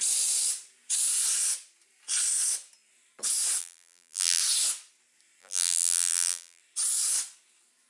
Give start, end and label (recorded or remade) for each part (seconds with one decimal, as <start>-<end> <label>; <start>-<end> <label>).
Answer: 0.0-3.6 recorded; 3.6-4.4 remade; 4.4-5.4 recorded; 5.4-6.6 remade; 6.6-7.9 recorded